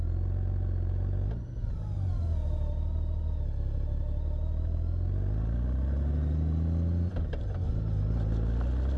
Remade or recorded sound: recorded